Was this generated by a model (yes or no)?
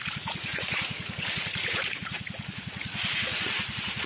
yes